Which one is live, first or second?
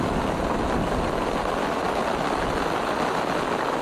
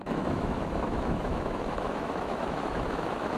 first